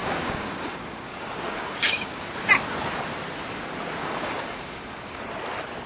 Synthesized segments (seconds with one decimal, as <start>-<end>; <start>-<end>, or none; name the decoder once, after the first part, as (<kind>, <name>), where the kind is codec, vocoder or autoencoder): 0.0-2.3 (codec, DAC); 4.0-5.2